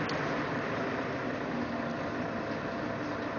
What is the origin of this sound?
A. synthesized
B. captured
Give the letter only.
B